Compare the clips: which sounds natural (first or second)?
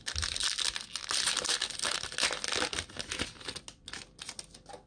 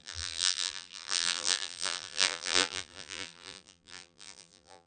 first